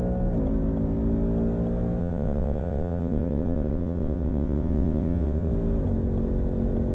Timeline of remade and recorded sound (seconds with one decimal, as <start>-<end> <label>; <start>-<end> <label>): 0.0-2.0 recorded; 2.0-5.5 remade; 5.5-6.9 recorded